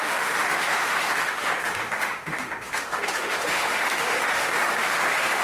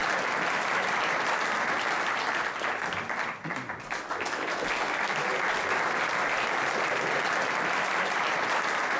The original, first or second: second